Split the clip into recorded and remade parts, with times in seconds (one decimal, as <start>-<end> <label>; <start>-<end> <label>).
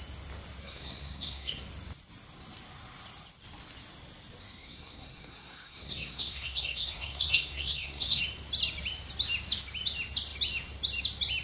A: 0.0-0.6 recorded; 0.6-1.6 remade; 1.6-4.4 recorded; 4.4-8.2 remade; 8.2-11.4 recorded